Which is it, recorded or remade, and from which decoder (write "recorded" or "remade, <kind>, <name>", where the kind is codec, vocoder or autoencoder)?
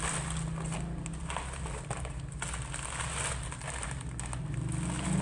recorded